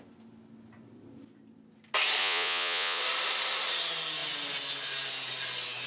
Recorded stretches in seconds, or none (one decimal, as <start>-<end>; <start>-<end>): 0.0-2.2; 3.0-5.9

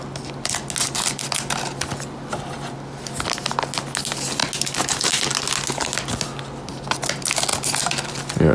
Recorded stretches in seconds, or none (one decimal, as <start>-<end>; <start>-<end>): 0.0-8.5

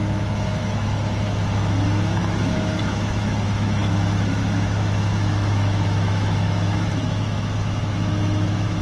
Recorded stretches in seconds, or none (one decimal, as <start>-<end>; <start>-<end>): none

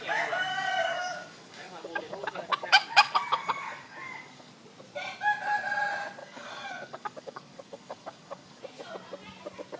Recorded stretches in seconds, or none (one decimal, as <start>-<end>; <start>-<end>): 0.0-0.5; 4.5-6.2; 8.6-9.8